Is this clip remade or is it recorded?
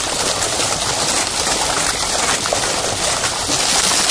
recorded